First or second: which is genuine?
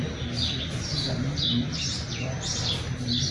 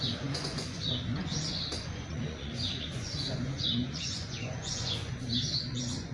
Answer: first